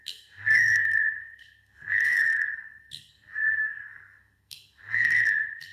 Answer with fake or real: fake